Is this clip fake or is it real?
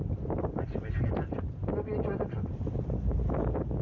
real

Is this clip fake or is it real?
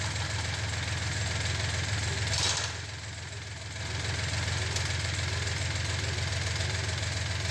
real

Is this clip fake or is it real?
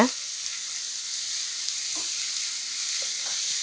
real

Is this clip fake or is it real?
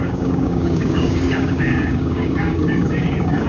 fake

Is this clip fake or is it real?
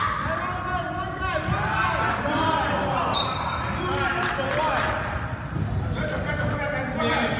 real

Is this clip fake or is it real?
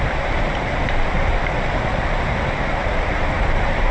fake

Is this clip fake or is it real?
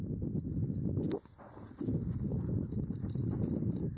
real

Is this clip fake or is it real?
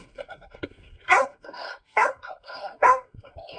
fake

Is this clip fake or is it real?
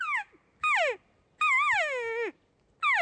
real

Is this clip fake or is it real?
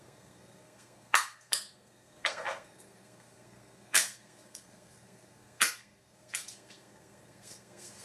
fake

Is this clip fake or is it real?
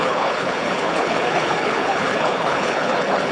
fake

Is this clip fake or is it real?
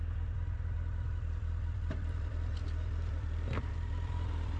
real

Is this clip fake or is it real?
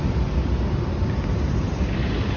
real